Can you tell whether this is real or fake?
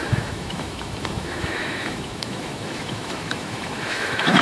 fake